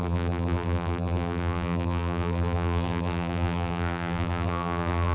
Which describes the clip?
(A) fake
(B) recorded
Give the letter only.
A